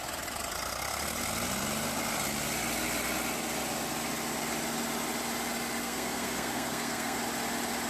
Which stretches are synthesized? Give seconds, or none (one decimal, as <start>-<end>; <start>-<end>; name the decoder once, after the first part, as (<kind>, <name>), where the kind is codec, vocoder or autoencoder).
5.8-7.2 (codec, SNAC)